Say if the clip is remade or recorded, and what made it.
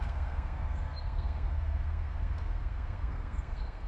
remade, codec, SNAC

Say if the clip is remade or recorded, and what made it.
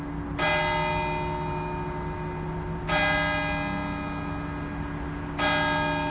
recorded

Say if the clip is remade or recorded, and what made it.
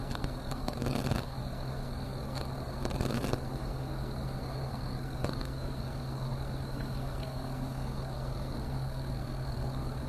remade, codec, SNAC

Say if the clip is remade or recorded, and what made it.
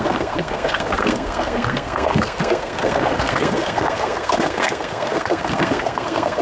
remade, codec, SNAC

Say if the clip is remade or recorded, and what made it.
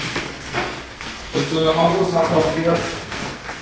remade, codec, SNAC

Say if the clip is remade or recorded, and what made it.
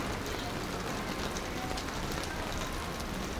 recorded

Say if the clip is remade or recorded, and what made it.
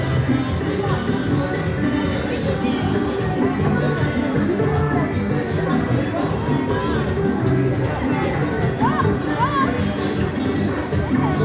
recorded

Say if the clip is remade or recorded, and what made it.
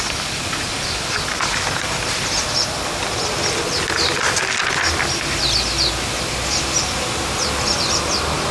recorded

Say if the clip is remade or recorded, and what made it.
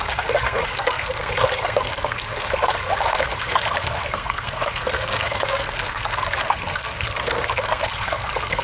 remade, codec, SNAC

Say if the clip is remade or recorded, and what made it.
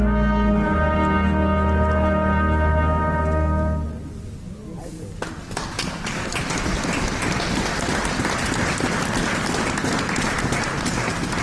recorded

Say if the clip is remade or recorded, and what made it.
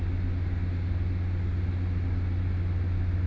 recorded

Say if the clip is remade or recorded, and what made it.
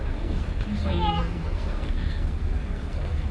remade, codec, SNAC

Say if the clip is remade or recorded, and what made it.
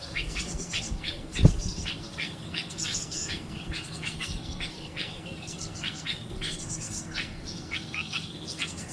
remade, codec, SNAC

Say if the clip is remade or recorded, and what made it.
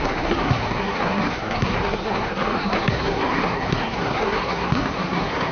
remade, codec, SNAC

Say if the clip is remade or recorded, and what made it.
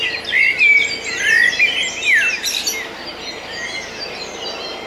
recorded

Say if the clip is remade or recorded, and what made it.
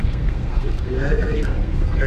remade, codec, SNAC